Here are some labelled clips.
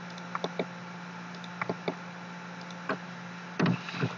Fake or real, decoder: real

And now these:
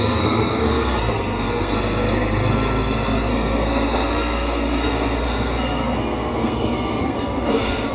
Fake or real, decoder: fake, codec, SNAC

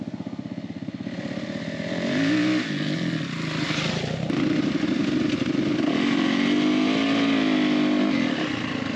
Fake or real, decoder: real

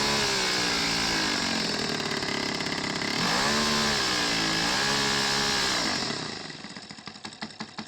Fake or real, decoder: real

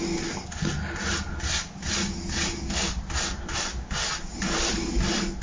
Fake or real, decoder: real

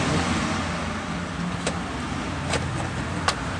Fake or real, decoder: real